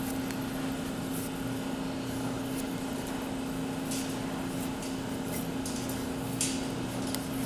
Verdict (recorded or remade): recorded